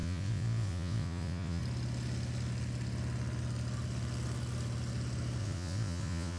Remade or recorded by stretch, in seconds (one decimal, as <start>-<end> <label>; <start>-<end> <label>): 0.0-1.6 remade; 1.6-5.4 recorded; 5.4-6.4 remade